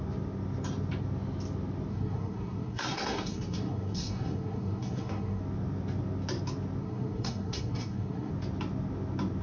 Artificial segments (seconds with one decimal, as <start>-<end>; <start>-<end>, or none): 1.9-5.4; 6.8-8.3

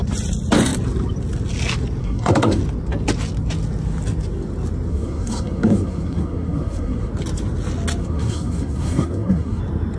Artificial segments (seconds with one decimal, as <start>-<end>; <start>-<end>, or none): 2.0-2.6; 4.9-7.1; 8.0-9.6

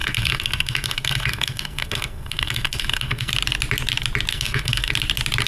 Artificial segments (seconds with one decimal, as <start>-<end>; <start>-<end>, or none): 0.0-3.3; 4.3-4.9

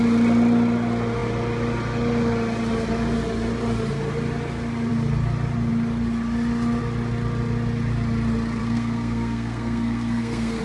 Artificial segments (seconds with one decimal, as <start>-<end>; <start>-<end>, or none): 8.6-10.6

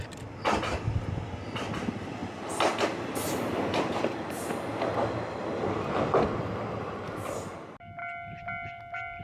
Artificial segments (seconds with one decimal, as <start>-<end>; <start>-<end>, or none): none

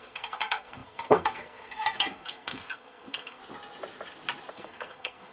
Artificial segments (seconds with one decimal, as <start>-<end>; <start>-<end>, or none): 0.0-3.4; 4.5-5.3

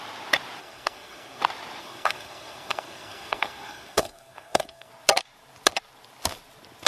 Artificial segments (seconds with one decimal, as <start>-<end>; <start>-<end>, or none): 0.6-1.4; 1.8-4.9

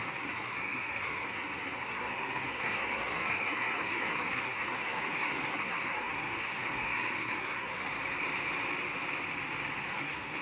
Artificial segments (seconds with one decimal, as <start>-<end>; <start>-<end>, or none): 0.0-7.8; 10.0-10.4